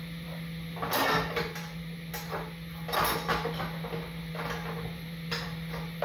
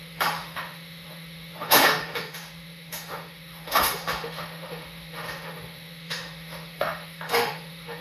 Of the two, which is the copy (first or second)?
second